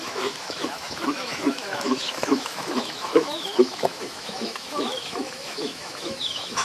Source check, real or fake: fake